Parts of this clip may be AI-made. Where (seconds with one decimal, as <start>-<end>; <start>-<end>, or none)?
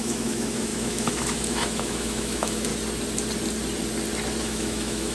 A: 0.0-2.7; 4.4-5.1